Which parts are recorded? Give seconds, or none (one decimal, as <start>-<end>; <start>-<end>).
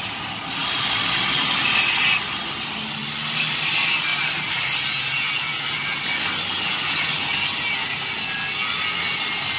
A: 0.0-9.6